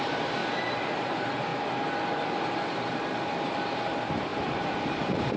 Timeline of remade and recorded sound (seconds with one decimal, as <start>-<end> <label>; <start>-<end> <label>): 0.0-0.4 remade; 0.4-1.0 recorded; 1.0-1.5 remade; 1.5-2.9 recorded; 2.9-5.4 remade